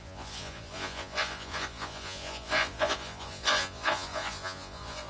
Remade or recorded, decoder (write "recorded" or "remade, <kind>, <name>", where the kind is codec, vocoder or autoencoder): remade, vocoder, Vocos